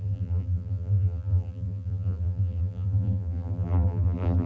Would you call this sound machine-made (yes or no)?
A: yes